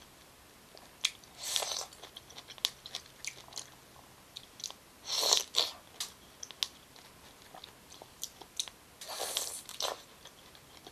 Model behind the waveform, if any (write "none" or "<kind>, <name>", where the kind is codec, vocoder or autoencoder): none